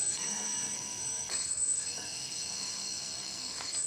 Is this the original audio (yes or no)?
no